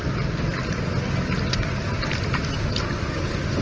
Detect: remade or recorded recorded